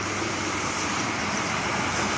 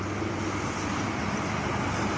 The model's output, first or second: first